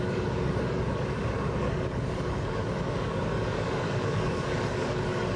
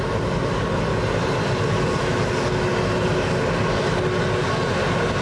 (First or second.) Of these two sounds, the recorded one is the second